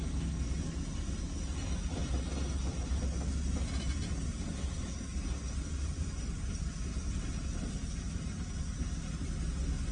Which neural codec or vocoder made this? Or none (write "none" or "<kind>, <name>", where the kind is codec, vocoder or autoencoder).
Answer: none